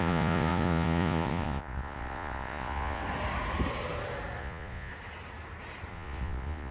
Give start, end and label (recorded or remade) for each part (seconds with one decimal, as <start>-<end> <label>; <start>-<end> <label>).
0.0-3.0 remade; 3.0-4.4 recorded; 4.4-4.9 remade; 4.9-5.9 recorded; 5.9-6.7 remade